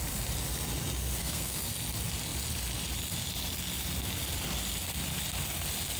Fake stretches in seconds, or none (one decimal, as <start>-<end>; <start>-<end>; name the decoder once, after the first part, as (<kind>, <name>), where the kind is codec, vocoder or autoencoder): 1.2-1.7 (codec, SNAC)